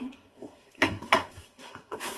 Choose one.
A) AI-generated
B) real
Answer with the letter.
A